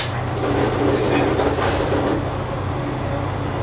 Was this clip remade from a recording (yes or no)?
no